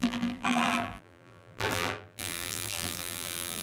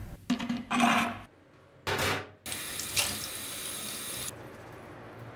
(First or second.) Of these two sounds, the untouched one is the second